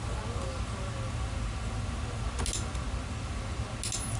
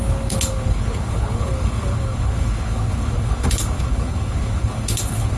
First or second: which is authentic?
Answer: first